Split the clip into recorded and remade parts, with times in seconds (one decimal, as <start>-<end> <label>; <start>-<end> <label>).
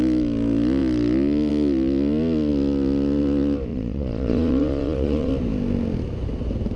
0.0-3.7 recorded; 3.7-5.3 remade; 5.3-6.8 recorded